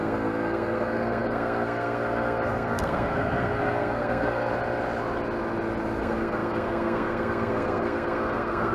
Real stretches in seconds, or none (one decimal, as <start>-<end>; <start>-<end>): 4.5-6.0